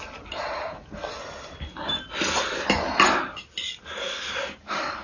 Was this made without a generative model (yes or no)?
yes